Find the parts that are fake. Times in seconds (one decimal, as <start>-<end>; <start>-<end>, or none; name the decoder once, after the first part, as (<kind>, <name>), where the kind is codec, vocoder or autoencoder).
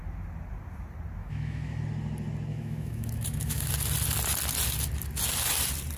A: 1.2-1.8 (autoencoder, DAC-VAE); 2.5-3.7